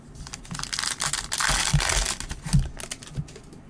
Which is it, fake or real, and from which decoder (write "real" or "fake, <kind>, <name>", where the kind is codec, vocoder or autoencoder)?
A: real